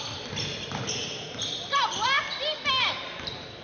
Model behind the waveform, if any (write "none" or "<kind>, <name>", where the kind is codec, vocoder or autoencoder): none